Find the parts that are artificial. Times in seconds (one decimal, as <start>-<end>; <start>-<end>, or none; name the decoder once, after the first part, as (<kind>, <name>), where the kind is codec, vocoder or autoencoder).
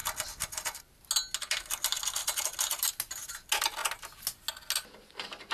none